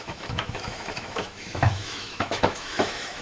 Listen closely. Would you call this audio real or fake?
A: fake